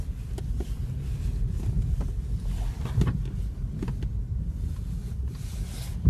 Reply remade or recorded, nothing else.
recorded